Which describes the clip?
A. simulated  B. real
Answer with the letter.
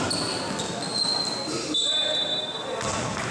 B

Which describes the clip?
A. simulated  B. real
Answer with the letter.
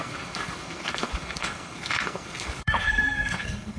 A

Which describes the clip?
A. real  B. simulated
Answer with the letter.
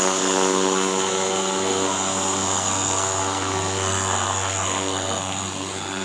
B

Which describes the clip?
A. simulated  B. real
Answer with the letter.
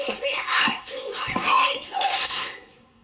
A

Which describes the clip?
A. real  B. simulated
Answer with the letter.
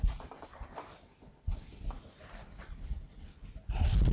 A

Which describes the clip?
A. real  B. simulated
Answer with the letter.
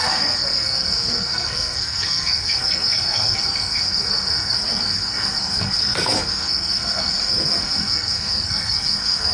B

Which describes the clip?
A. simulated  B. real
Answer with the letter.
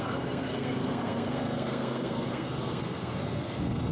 A